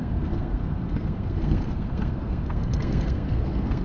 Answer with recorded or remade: remade